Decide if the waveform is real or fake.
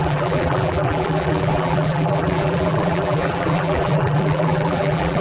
fake